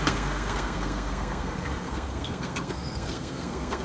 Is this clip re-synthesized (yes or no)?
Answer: yes